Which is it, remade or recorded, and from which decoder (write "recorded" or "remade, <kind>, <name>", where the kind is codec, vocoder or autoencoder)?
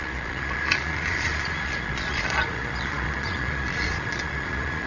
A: remade, vocoder, Vocos